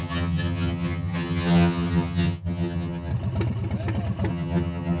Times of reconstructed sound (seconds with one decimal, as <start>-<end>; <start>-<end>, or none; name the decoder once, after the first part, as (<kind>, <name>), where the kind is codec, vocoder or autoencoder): 0.0-3.1 (vocoder, HiFi-GAN); 4.3-5.0